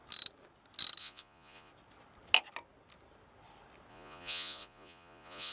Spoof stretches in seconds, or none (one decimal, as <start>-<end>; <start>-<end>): 1.0-1.7; 3.9-5.5